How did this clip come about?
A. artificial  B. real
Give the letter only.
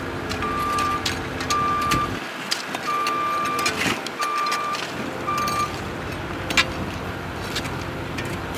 B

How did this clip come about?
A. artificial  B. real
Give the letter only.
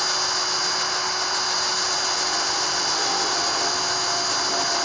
B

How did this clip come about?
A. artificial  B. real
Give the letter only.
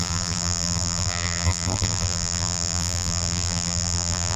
A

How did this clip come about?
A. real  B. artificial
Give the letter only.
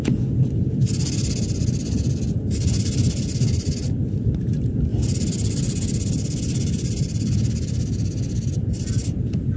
A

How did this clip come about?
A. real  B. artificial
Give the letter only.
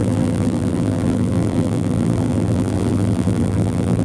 B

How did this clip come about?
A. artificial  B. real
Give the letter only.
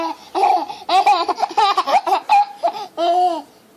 B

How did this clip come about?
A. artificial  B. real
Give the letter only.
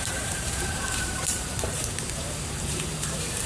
A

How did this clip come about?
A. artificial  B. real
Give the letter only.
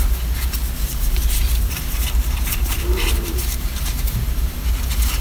A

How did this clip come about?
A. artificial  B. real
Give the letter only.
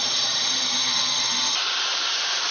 A